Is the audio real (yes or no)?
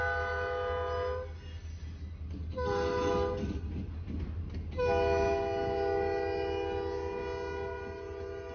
yes